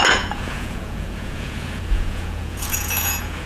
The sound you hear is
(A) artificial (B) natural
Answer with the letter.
A